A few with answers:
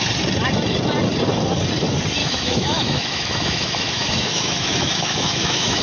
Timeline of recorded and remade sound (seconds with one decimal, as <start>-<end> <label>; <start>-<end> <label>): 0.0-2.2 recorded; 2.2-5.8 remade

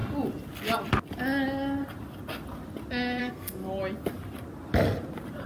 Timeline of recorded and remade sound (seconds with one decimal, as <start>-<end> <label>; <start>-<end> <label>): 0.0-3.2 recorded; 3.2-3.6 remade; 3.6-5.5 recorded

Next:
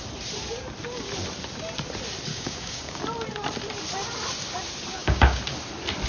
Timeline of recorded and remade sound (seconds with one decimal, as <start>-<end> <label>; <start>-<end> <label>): 0.0-2.3 recorded; 2.3-3.0 remade; 3.0-4.9 recorded; 4.9-5.4 remade; 5.4-6.1 recorded

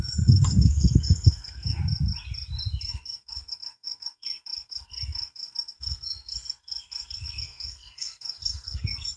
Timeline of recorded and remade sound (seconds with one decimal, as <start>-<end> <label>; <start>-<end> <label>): 0.0-1.8 remade; 1.8-2.8 recorded; 2.8-9.2 remade